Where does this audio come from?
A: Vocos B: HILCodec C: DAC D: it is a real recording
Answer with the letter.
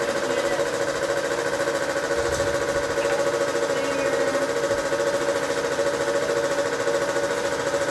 D